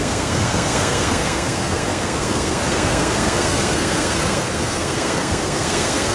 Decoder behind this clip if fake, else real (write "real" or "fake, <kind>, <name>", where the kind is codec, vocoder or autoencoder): fake, codec, SNAC